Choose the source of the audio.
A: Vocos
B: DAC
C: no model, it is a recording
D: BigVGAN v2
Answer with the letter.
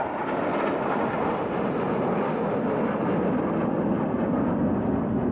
C